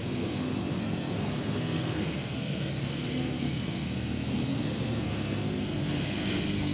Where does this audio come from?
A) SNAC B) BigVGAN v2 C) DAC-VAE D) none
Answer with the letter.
A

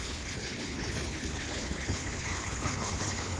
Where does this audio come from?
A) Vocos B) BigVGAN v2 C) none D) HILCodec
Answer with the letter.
D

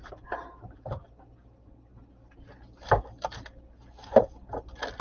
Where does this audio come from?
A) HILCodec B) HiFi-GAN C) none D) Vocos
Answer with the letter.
C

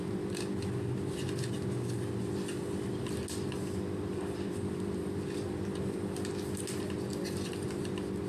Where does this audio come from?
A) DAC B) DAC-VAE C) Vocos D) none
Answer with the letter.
D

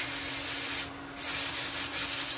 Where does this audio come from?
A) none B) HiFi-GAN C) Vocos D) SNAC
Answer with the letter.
A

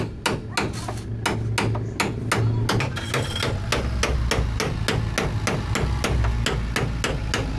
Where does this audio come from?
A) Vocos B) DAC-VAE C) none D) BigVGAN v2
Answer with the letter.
C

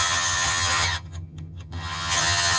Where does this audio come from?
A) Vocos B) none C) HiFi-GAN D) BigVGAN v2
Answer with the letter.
C